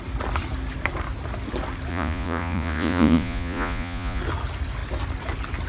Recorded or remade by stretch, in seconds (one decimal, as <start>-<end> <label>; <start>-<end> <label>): 0.0-1.9 recorded; 1.9-4.2 remade; 4.2-5.7 recorded